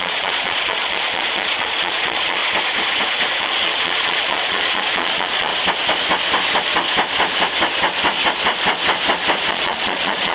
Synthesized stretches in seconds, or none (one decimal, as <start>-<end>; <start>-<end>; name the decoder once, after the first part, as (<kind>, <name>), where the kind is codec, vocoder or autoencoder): 0.0-2.4 (vocoder, Vocos); 3.3-5.5; 9.5-10.3